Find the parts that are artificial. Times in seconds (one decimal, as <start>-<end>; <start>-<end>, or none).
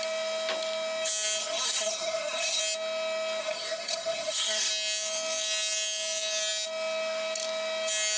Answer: 1.4-2.6; 3.4-4.7